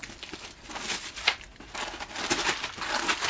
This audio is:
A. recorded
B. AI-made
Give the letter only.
A